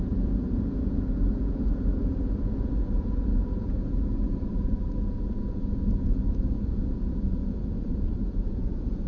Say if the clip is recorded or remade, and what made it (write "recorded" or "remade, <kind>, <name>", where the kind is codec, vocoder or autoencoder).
remade, vocoder, Vocos